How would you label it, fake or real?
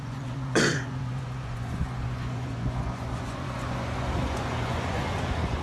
fake